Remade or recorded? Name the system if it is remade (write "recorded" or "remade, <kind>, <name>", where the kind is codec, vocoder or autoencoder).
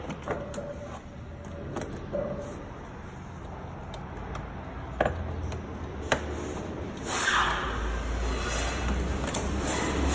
recorded